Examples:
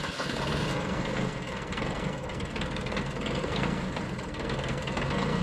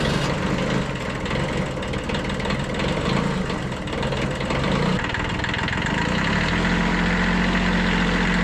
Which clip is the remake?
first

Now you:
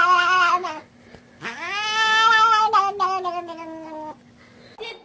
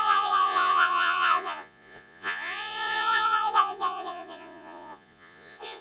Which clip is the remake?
second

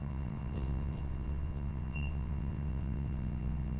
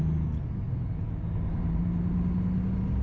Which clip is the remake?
first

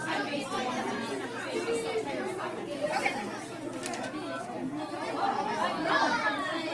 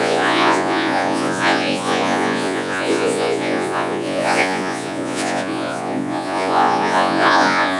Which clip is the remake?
second